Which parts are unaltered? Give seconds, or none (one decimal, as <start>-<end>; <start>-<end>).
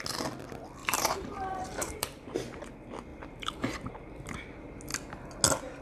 0.0-0.8; 2.6-3.1; 3.9-5.8